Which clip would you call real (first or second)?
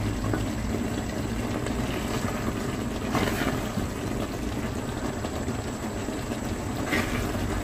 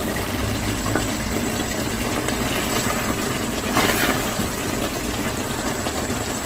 first